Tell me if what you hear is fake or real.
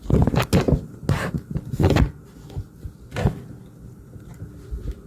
real